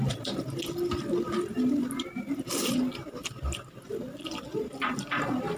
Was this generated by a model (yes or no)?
no